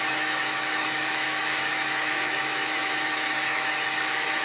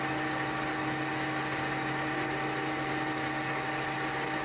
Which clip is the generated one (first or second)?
first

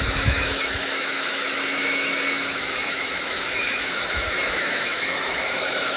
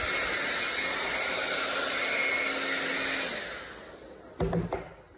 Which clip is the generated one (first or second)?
first